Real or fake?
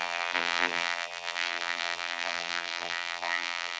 fake